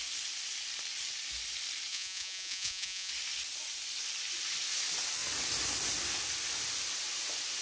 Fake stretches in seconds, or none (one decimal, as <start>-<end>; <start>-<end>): 1.9-3.1